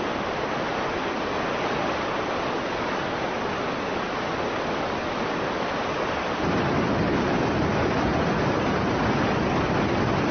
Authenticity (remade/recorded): recorded